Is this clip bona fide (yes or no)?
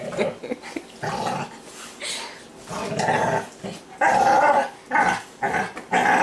yes